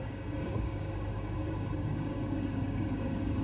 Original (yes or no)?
no